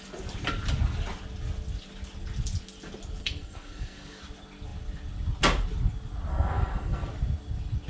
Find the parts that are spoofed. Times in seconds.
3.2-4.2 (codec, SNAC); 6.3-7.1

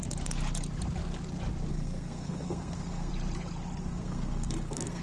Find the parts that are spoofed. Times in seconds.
1.7-3.1 (codec, SNAC); 3.8-5.0

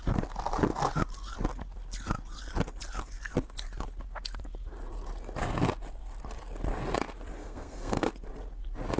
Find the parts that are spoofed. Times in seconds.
7.4-8.1 (codec, SNAC)

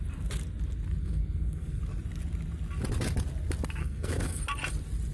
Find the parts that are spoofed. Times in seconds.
1.0-1.8 (codec, SNAC); 3.8-4.4

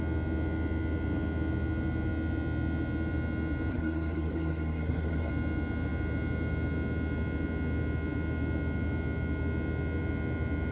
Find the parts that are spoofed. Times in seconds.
3.7-5.3 (codec, SNAC)

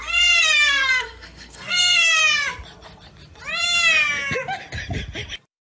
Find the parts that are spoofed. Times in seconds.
0.0-2.2 (codec, SNAC)

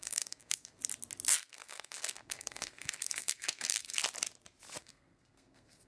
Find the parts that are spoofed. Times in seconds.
0.0-0.8 (codec, SNAC); 1.3-4.0; 4.8-5.9

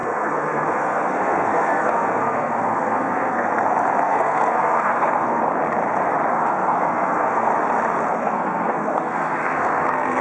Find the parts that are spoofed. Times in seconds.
0.0-3.5 (codec, SNAC); 4.0-5.4; 6.3-7.5; 8.2-10.2